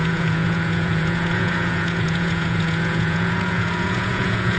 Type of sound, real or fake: fake